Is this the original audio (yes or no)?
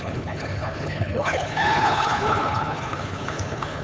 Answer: no